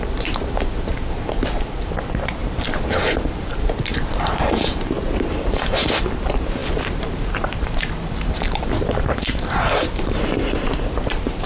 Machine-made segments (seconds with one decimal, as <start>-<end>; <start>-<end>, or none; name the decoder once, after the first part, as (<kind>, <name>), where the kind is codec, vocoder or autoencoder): 0.0-11.5 (vocoder, BigVGAN v2)